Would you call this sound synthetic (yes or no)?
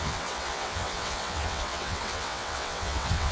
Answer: yes